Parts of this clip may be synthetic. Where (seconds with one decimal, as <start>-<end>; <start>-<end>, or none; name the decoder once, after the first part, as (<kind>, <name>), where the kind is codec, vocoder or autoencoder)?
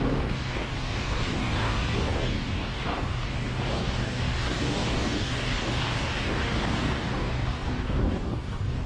0.0-8.9 (codec, DAC)